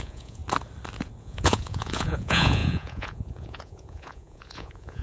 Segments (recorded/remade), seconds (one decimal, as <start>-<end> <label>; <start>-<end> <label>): 0.0-0.4 remade; 0.4-1.2 recorded; 1.2-5.0 remade